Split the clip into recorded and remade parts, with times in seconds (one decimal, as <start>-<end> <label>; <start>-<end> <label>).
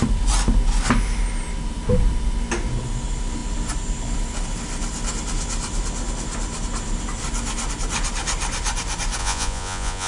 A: 0.0-9.2 recorded; 9.2-10.1 remade